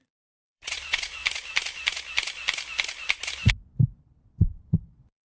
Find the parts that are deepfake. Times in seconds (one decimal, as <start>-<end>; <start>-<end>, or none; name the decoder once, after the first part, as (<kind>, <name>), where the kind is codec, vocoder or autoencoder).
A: 0.0-1.2 (vocoder, Vocos); 4.0-5.2